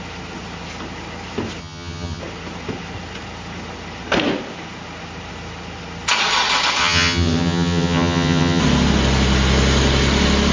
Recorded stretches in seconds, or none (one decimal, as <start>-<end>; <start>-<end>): 0.0-1.6; 2.2-6.8; 8.6-10.5